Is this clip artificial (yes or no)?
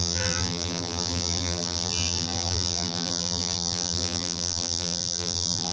yes